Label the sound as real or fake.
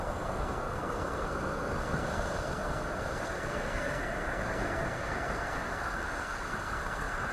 fake